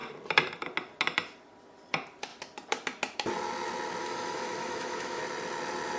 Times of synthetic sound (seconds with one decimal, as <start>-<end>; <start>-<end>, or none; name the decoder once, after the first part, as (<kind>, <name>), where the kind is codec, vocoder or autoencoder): 4.0-5.2 (autoencoder, DAC-VAE)